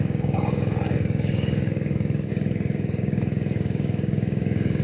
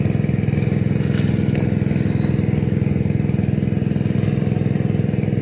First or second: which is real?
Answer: second